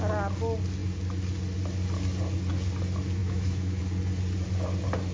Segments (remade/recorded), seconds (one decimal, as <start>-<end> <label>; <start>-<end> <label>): 0.0-3.2 recorded; 3.2-3.8 remade; 3.8-5.1 recorded